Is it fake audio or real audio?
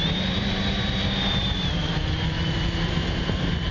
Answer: fake